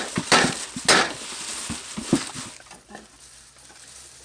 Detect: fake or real real